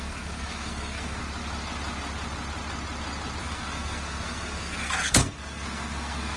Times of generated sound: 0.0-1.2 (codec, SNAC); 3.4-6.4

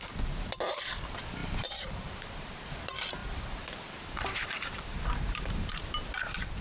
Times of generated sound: 1.4-2.8 (vocoder, BigVGAN v2); 3.2-5.8

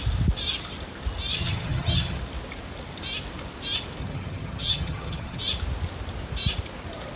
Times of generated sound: 1.3-2.2 (vocoder, HiFi-GAN); 4.0-5.4

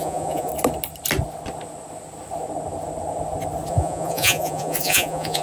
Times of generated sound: 0.0-0.5 (vocoder, Vocos); 3.7-5.4